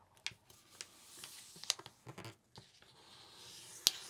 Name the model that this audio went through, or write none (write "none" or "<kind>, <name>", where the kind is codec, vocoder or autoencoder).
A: none